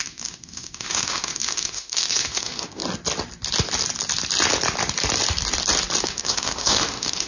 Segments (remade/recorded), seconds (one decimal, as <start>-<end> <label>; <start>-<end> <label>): 0.0-2.8 remade; 2.8-6.0 recorded; 6.0-7.3 remade